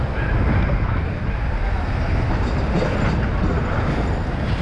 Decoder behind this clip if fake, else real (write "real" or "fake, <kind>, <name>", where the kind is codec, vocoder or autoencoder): real